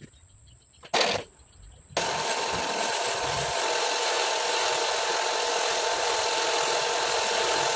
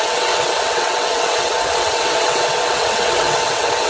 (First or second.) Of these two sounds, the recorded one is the first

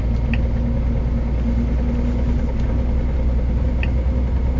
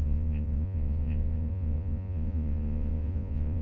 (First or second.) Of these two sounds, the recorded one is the first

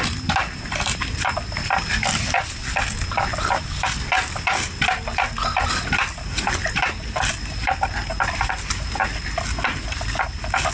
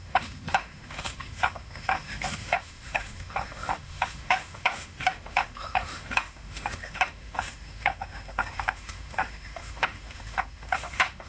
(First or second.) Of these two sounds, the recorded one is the first